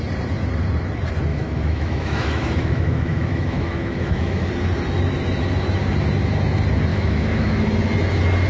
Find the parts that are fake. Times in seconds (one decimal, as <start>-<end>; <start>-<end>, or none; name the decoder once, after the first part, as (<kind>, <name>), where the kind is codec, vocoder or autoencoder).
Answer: 1.3-4.5 (autoencoder, DAC-VAE); 6.9-7.6